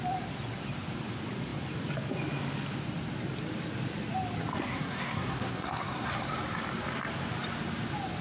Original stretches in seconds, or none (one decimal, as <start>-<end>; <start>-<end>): 0.0-4.6; 6.1-8.2